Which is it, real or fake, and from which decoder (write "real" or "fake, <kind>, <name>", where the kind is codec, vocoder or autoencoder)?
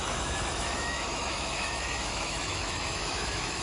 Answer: fake, autoencoder, DAC-VAE